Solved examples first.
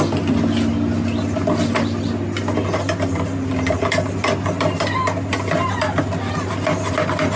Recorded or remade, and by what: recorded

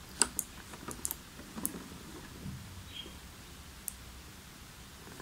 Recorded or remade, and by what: recorded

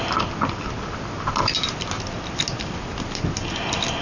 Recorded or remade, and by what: recorded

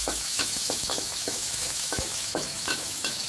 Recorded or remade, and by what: remade, autoencoder, DAC-VAE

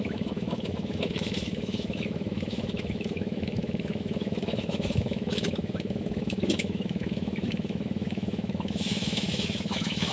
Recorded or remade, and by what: remade, autoencoder, DAC-VAE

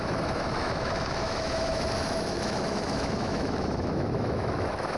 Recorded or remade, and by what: remade, autoencoder, DAC-VAE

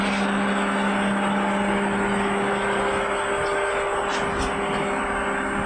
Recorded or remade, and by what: recorded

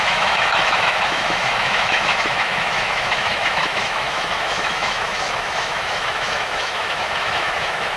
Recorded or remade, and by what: remade, autoencoder, DAC-VAE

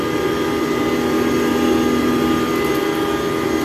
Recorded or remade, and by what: recorded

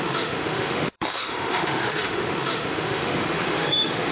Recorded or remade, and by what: remade, autoencoder, DAC-VAE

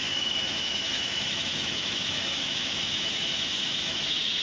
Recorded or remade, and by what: remade, autoencoder, DAC-VAE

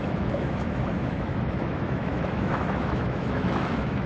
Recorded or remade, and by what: remade, autoencoder, DAC-VAE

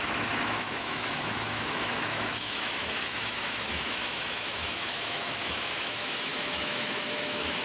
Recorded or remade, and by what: remade, autoencoder, DAC-VAE